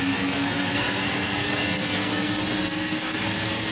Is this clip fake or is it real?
fake